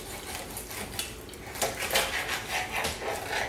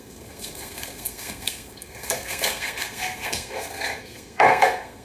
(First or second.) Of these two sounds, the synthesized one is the second